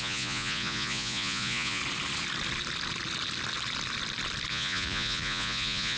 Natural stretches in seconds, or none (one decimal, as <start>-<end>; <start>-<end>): 1.8-4.5